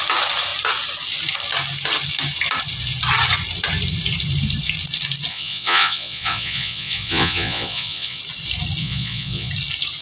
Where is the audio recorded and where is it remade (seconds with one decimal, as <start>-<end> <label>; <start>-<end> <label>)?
0.0-5.3 recorded; 5.3-8.2 remade; 8.2-8.8 recorded; 8.8-9.5 remade; 9.5-10.0 recorded